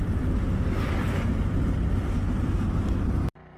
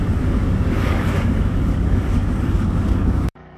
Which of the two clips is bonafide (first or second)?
first